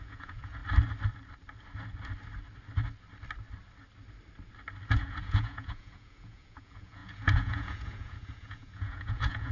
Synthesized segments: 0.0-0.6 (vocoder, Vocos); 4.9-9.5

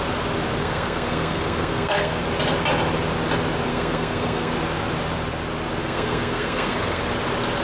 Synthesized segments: 0.6-2.2 (codec, SNAC); 3.7-4.5; 5.8-7.0

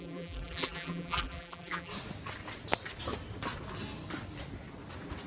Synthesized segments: 0.0-1.9 (vocoder, BigVGAN v2)

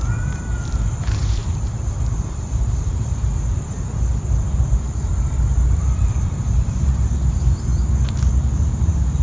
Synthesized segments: 0.0-7.7 (vocoder, BigVGAN v2); 8.6-9.2